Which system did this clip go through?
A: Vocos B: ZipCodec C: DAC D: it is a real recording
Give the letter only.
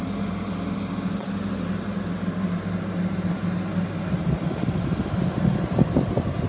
D